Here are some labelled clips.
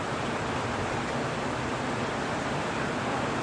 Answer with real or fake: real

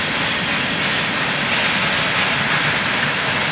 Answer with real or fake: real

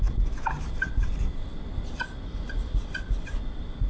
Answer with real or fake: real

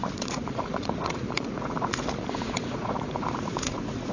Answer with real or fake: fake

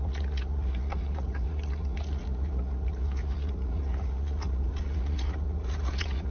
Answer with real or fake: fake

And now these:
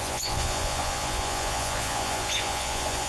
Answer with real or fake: fake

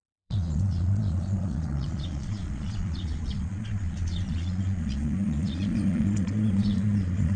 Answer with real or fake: fake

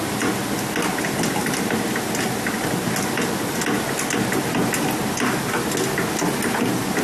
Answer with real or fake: real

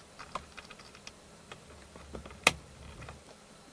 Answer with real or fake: real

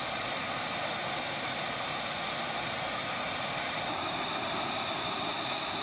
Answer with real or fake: real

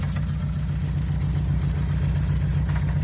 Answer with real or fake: real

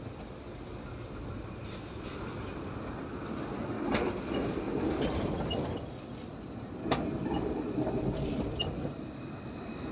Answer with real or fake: real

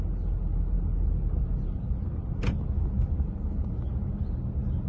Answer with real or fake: real